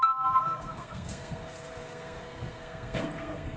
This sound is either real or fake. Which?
fake